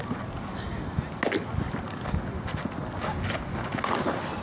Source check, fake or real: real